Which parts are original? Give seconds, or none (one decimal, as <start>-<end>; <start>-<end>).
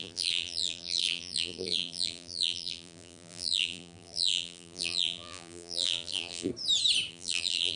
6.5-7.1